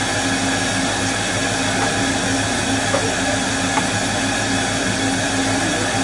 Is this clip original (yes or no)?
yes